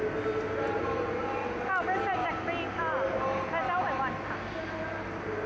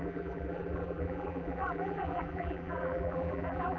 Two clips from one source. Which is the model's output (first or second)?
second